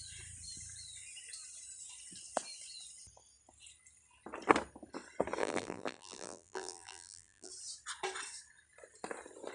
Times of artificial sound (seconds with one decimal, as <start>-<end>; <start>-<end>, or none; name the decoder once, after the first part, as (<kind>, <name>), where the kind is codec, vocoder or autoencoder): 5.4-7.5 (vocoder, BigVGAN v2)